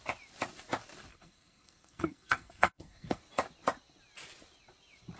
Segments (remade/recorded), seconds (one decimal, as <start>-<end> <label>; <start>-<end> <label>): 0.0-1.1 recorded; 1.1-3.2 remade; 3.2-5.2 recorded